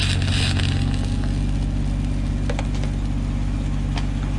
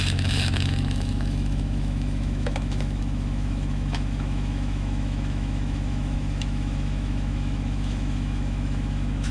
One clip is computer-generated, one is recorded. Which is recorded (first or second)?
first